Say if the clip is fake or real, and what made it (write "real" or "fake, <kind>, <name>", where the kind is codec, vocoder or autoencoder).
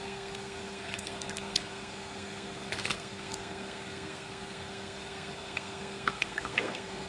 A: fake, codec, SNAC